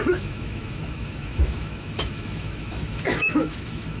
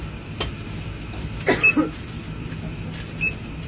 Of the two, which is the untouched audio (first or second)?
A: second